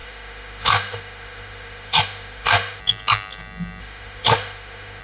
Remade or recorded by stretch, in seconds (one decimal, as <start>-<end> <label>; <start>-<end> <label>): 0.0-2.8 remade; 2.8-3.8 recorded; 3.8-5.0 remade